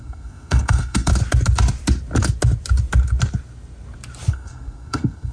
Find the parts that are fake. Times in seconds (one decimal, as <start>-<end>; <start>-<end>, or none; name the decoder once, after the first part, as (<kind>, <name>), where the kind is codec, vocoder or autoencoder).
0.0-1.1 (codec, SNAC); 4.3-5.3